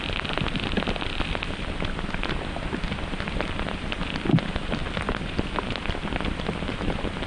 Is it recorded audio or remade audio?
recorded